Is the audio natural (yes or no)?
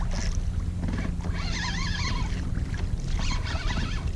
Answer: yes